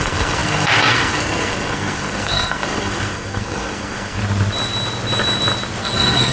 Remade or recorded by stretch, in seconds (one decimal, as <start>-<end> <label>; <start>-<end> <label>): 0.0-4.2 remade; 4.2-5.8 recorded; 5.8-6.3 remade